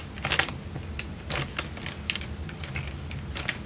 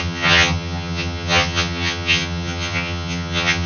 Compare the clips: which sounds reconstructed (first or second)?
second